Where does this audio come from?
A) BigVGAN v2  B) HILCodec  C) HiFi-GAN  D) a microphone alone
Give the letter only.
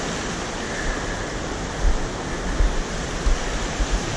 D